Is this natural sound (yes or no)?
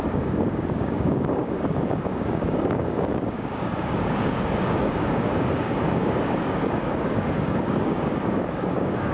no